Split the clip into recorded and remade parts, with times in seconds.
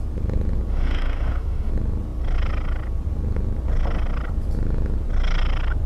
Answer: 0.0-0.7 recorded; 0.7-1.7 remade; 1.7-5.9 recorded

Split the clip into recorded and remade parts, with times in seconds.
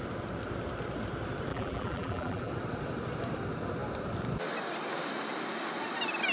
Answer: 0.0-1.5 recorded; 1.5-2.5 remade; 2.5-6.3 recorded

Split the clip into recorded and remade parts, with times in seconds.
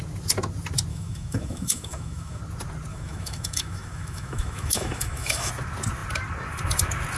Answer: 0.0-0.9 recorded; 0.9-2.4 remade; 2.4-2.9 recorded; 2.9-5.5 remade; 5.5-7.2 recorded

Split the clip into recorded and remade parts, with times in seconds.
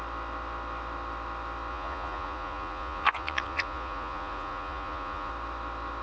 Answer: 0.0-1.7 recorded; 1.7-5.3 remade; 5.3-6.0 recorded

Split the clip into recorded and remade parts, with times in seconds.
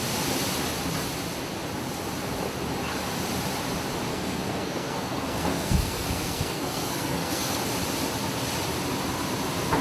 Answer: 0.0-4.1 recorded; 4.1-7.6 remade; 7.6-9.8 recorded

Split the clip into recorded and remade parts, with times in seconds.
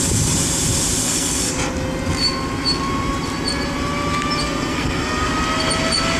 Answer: 0.0-1.0 recorded; 1.0-1.5 remade; 1.5-4.4 recorded; 4.4-5.3 remade; 5.3-6.2 recorded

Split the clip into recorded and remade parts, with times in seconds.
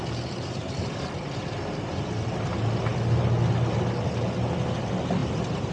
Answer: 0.0-0.6 remade; 0.6-5.2 recorded; 5.2-5.7 remade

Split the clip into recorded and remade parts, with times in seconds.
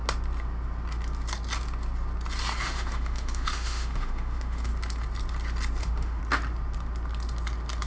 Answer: 0.0-2.6 recorded; 2.6-4.7 remade; 4.7-5.8 recorded; 5.8-6.2 remade; 6.2-7.9 recorded